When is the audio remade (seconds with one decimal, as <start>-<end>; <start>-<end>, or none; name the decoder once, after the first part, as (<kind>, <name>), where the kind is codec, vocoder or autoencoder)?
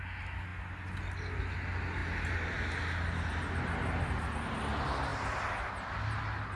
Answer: none